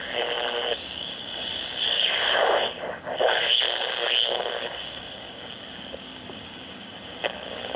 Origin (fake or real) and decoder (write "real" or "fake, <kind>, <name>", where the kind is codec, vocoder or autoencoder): fake, codec, DAC